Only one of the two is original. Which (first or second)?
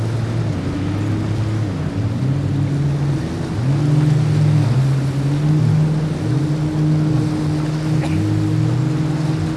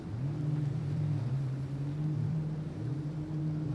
first